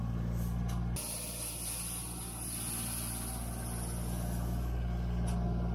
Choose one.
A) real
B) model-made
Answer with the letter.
A